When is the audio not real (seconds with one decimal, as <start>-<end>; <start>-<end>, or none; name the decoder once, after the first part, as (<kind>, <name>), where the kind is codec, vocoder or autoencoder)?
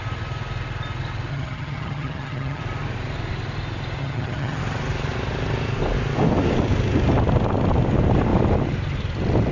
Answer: 1.3-2.6 (vocoder, HiFi-GAN); 4.0-4.6